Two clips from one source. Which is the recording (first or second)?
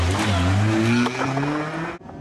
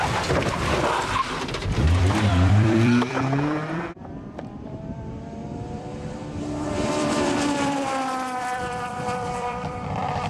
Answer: first